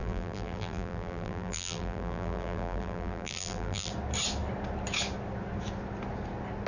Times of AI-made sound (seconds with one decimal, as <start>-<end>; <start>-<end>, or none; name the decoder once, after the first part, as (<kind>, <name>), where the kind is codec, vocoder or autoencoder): 0.0-3.9 (vocoder, BigVGAN v2)